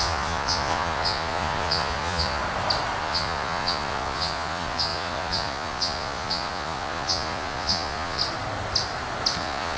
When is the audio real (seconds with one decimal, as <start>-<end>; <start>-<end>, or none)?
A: 2.4-3.0; 8.2-9.4